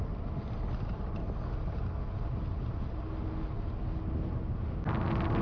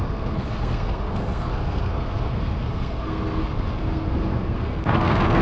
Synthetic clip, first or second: second